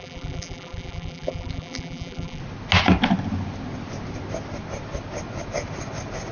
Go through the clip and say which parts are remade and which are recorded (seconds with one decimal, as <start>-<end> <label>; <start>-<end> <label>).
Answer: 0.0-2.4 remade; 2.4-6.3 recorded